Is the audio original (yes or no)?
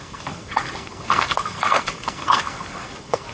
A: no